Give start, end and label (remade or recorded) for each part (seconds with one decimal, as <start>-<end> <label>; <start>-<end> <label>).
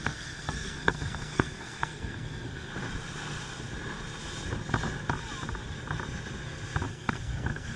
0.0-2.7 remade; 2.7-6.9 recorded; 6.9-7.8 remade